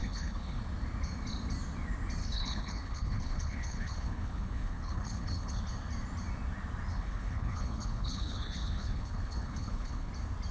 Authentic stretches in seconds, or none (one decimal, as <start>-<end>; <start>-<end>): 0.6-2.2; 5.6-6.9; 10.1-10.5